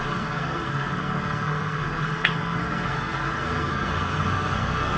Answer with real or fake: fake